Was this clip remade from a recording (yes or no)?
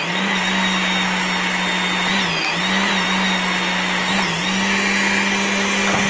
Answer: no